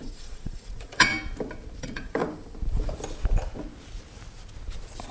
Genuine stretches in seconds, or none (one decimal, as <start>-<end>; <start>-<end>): 1.1-1.8; 2.2-5.1